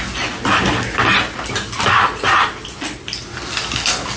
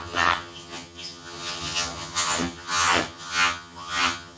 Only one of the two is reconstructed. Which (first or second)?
second